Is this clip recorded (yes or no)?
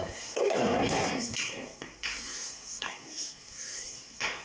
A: no